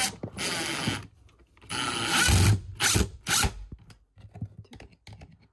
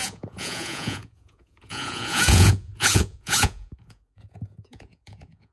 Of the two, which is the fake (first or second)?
second